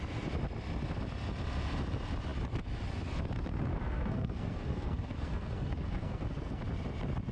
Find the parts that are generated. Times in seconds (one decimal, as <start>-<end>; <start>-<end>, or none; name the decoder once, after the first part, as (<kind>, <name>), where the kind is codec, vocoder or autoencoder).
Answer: 3.7-6.6 (codec, SNAC)